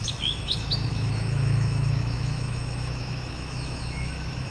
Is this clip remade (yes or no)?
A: yes